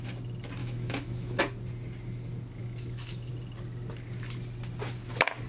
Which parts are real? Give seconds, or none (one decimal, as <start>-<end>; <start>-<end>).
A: 0.0-0.6; 1.4-2.6; 3.3-5.5